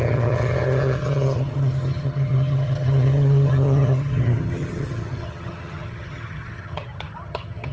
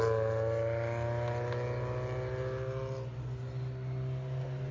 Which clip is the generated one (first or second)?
first